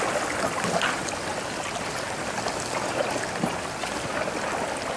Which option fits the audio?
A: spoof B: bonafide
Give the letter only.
B